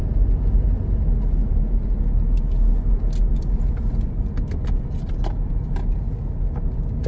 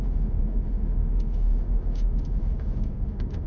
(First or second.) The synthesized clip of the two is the second